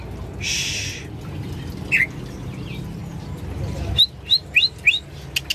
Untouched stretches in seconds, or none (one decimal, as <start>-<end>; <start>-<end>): 0.0-5.5